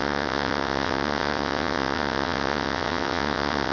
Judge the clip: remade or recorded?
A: remade